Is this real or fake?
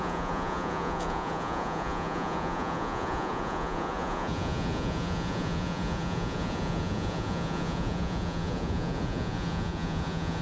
fake